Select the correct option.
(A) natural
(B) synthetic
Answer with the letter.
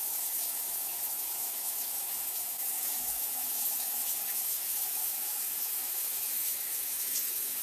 B